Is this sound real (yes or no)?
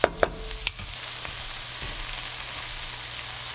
yes